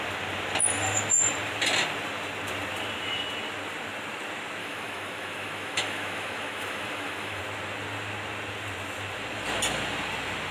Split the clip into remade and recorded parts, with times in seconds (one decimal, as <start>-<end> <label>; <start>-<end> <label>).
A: 0.0-4.6 recorded; 4.6-7.4 remade; 7.4-10.5 recorded